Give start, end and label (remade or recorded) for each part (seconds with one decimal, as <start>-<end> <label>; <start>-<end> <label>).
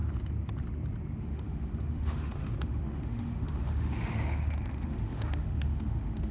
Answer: 0.0-1.2 recorded; 1.2-6.3 remade